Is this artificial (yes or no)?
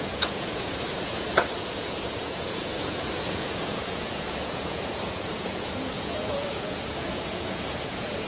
yes